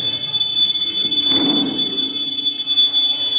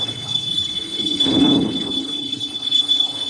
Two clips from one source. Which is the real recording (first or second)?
first